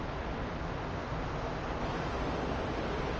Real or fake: real